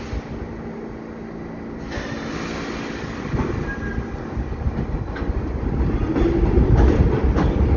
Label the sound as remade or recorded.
recorded